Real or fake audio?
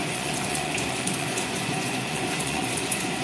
fake